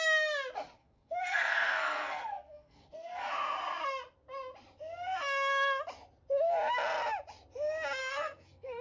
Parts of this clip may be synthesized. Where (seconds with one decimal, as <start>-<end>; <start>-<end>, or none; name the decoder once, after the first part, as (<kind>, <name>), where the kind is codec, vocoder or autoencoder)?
0.8-3.3 (codec, SNAC); 8.0-8.8